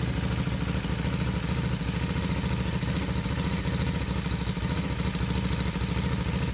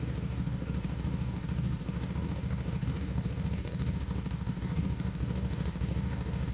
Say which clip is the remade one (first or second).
second